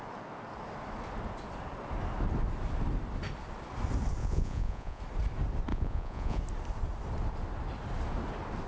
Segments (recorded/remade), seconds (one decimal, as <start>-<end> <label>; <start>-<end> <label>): 0.0-4.2 recorded; 4.2-5.0 remade; 5.0-5.7 recorded; 5.7-6.4 remade; 6.4-8.7 recorded